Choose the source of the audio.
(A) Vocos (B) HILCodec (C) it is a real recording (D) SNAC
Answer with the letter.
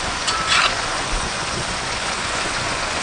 A